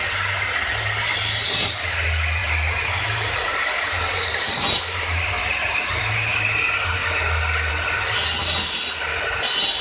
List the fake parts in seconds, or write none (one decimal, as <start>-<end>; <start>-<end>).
2.4-6.3; 8.4-8.9